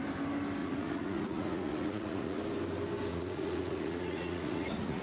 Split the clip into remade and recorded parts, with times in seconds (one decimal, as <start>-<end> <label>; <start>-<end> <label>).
0.0-0.6 recorded; 0.6-2.4 remade; 2.4-3.1 recorded; 3.1-5.0 remade